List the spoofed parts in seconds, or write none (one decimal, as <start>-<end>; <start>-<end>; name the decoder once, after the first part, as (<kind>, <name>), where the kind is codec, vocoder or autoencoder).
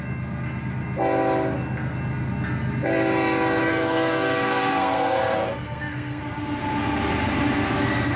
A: 3.6-6.2 (codec, SNAC)